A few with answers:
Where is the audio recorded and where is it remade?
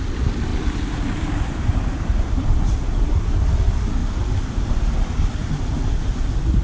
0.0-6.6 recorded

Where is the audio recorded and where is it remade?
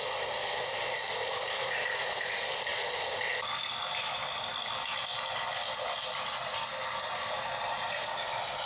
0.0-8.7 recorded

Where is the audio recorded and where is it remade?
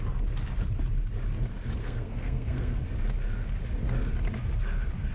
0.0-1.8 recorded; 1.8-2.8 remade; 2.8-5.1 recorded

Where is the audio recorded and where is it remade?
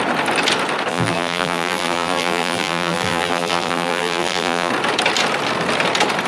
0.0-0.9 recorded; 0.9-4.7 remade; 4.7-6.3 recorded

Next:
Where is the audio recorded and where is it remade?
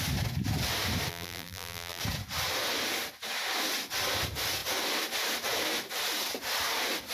0.0-1.1 recorded; 1.1-2.0 remade; 2.0-7.1 recorded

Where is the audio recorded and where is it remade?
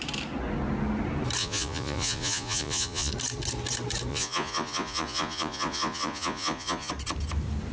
0.0-1.4 recorded; 1.4-3.1 remade; 3.1-4.1 recorded; 4.1-6.9 remade; 6.9-7.7 recorded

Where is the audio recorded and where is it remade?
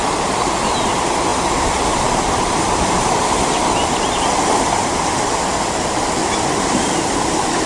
0.0-6.2 recorded; 6.2-7.2 remade; 7.2-7.7 recorded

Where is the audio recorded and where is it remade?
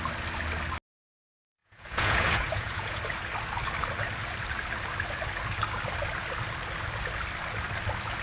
0.0-1.6 recorded; 1.6-3.0 remade; 3.0-8.2 recorded